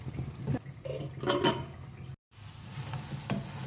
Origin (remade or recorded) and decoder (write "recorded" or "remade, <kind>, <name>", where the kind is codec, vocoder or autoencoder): recorded